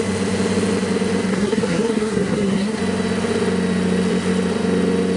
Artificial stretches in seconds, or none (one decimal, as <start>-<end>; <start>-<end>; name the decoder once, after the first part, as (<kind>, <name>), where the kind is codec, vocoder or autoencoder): 1.3-2.8 (codec, SNAC)